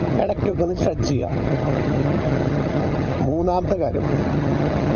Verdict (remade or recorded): remade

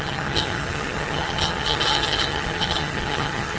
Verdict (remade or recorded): remade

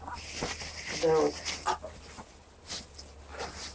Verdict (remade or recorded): recorded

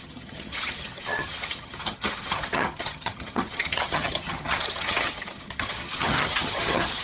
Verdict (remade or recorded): remade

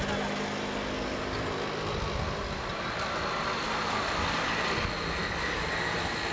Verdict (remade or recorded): recorded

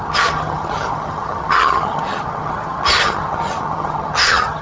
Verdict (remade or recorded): remade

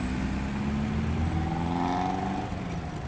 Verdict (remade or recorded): recorded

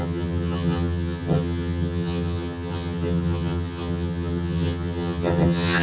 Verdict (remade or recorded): remade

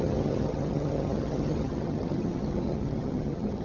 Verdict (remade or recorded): remade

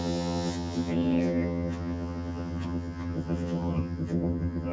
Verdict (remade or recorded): remade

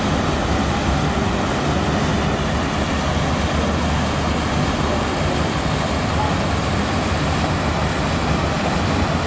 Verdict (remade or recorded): recorded